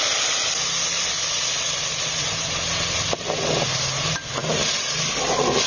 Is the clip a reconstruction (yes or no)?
no